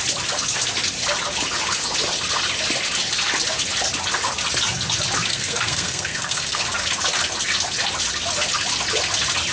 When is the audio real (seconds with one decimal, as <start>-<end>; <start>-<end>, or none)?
0.0-5.3; 6.6-9.5